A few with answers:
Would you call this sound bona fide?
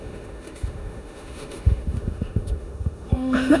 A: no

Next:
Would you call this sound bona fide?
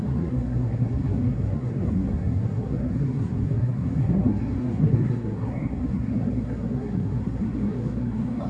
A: no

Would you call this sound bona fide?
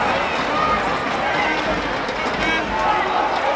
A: yes